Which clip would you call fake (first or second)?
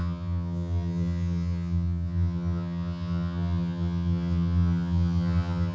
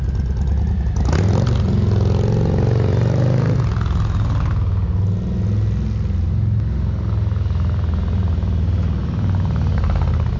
first